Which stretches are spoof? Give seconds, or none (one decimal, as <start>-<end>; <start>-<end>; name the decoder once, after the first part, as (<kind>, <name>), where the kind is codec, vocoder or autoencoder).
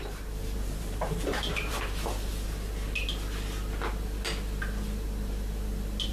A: 0.0-2.3 (vocoder, BigVGAN v2)